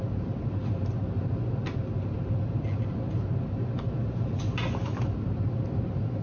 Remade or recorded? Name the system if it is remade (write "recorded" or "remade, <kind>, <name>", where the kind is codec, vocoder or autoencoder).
recorded